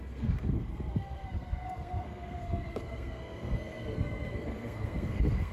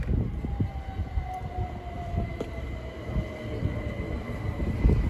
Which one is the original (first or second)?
second